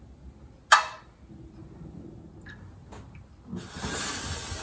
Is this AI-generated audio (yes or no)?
no